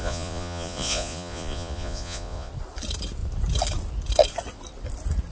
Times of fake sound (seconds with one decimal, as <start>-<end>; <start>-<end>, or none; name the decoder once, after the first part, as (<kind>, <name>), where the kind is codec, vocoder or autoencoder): 0.0-2.5 (vocoder, Vocos)